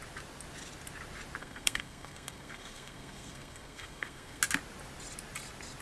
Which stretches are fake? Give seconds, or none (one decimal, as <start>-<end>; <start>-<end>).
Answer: 1.4-4.4